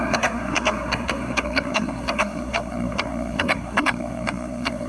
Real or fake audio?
fake